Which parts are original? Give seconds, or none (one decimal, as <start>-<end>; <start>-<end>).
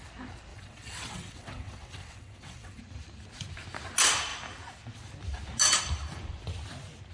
0.0-0.5; 2.8-7.1